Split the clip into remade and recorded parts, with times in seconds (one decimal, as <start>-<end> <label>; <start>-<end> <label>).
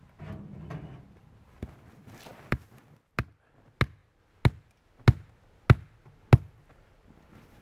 0.0-7.6 recorded